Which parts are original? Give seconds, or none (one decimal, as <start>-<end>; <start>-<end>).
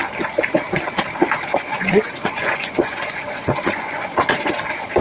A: 0.0-1.5; 4.5-5.0